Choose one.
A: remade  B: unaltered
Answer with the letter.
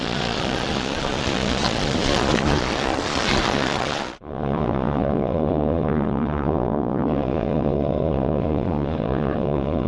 A